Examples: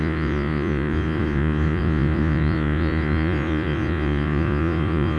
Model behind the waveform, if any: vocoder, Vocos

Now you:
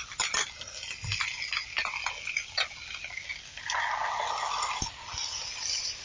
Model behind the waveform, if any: none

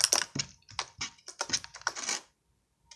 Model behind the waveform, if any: none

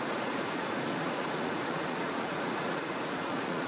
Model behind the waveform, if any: vocoder, Vocos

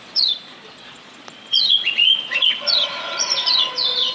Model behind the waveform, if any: vocoder, Vocos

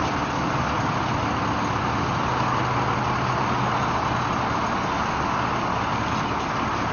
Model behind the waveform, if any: none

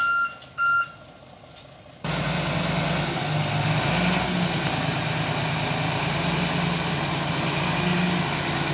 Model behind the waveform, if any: none